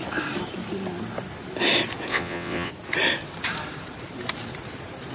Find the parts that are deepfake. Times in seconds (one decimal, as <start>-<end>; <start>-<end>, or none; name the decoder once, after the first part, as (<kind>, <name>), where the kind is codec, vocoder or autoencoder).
2.1-2.7 (vocoder, WaveNeXt)